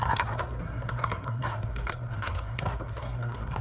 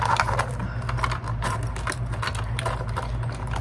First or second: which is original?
second